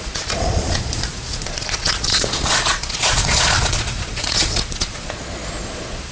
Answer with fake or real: fake